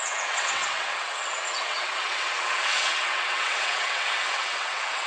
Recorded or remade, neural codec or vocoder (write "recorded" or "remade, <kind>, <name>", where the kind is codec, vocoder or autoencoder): remade, vocoder, WaveNeXt